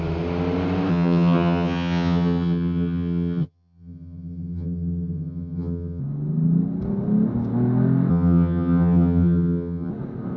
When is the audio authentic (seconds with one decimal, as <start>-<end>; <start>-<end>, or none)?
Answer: 0.0-0.9; 6.0-8.1; 9.9-10.4